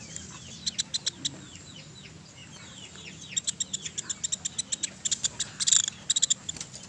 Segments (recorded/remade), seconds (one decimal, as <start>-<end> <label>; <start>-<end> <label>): 0.0-6.9 recorded